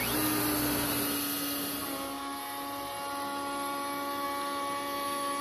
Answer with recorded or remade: recorded